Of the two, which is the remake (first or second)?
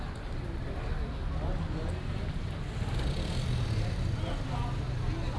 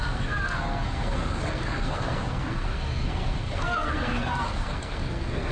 second